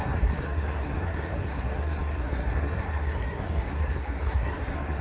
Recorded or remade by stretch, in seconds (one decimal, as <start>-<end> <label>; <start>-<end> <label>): 0.0-5.0 remade